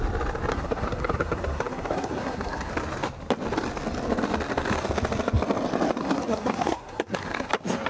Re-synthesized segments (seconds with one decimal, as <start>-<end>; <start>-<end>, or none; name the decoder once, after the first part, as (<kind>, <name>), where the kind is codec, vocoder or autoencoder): 0.5-2.7 (codec, SNAC); 6.0-7.5